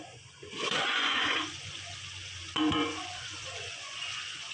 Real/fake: fake